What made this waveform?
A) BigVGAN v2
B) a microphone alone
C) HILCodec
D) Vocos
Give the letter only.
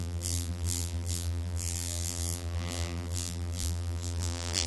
A